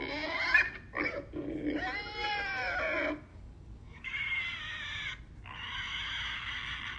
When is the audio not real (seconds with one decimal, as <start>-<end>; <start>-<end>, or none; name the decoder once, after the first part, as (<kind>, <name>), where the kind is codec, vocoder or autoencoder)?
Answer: 3.3-4.1 (codec, DAC)